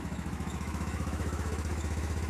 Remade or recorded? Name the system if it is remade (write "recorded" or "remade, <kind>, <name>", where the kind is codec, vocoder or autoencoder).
remade, autoencoder, DAC-VAE